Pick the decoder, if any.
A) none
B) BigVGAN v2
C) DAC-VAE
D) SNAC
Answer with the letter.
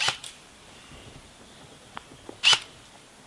A